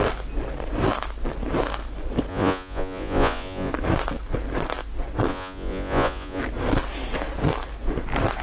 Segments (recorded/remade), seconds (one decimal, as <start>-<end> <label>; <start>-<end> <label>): 0.0-2.3 recorded; 2.3-3.7 remade; 3.7-5.3 recorded; 5.3-6.4 remade; 6.4-8.4 recorded